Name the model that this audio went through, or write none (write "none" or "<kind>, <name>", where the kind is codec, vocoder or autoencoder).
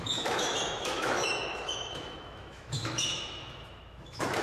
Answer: autoencoder, DAC-VAE